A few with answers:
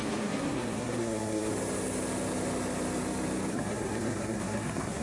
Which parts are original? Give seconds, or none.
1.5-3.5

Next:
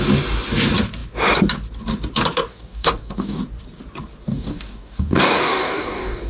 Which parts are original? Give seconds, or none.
0.0-2.5; 3.4-4.3

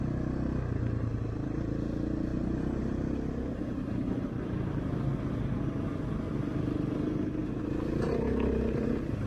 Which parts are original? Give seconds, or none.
0.0-2.3; 4.8-9.3

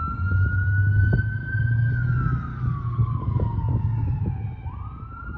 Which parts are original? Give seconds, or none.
0.0-2.5; 4.2-5.4

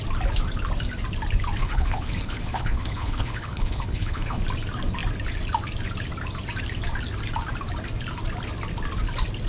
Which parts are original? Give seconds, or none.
0.0-1.6; 4.4-9.5

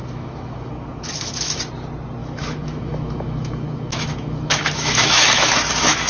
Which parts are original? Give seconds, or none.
1.6-2.2